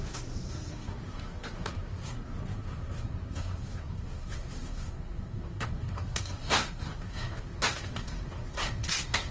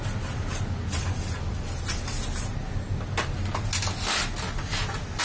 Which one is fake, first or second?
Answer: first